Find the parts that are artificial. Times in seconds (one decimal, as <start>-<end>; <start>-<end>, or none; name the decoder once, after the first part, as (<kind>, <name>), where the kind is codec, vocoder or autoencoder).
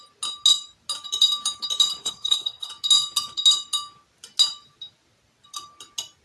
2.0-2.7 (codec, SNAC)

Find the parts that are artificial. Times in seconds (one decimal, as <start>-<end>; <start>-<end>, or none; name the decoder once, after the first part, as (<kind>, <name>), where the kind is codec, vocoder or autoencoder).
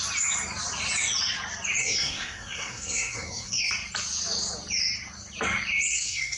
1.8-3.7 (codec, SNAC); 5.9-6.4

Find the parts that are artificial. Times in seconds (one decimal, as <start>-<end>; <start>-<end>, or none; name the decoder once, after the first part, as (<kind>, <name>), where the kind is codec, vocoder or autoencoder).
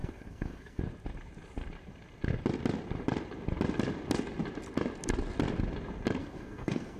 0.0-0.8 (codec, SNAC); 6.2-7.0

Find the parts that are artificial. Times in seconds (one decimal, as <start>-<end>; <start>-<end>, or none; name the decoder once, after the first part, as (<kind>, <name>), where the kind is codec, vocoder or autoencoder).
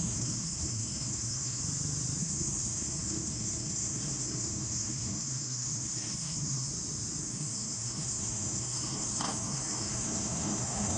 0.0-1.6 (codec, SNAC); 2.2-6.7; 7.2-11.0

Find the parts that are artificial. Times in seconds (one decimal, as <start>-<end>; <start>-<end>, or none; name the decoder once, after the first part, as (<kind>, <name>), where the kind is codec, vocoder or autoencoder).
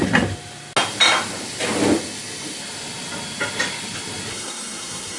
4.3-5.2 (codec, SNAC)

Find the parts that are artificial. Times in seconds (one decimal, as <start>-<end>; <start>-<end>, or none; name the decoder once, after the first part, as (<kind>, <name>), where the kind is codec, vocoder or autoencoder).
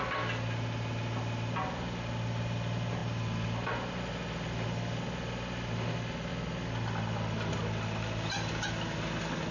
none